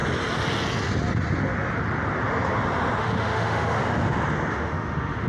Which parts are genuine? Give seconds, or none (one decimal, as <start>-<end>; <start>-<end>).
0.0-3.0; 3.8-4.5